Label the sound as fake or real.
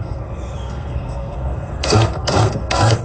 fake